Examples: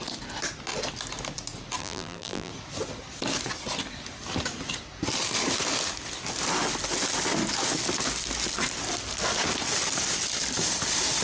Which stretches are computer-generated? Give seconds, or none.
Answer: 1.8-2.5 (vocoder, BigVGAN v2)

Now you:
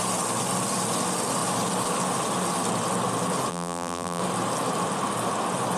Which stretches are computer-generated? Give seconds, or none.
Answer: 3.5-4.2 (vocoder, BigVGAN v2)

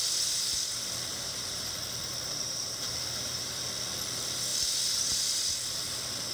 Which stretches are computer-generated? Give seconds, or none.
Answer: 1.1-1.7 (vocoder, BigVGAN v2); 2.6-3.7

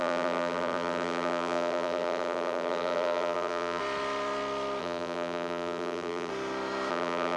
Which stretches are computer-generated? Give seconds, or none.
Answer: 0.0-3.8 (vocoder, BigVGAN v2); 4.8-6.3; 6.9-7.4

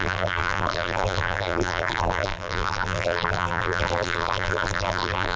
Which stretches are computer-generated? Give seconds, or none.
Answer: 0.0-5.4 (vocoder, BigVGAN v2)

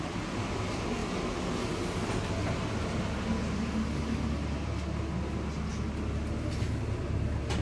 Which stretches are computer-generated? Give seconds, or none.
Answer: none